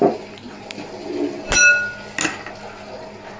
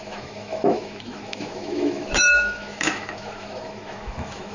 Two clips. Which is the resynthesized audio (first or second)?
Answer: second